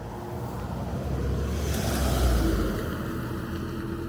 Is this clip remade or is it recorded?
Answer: recorded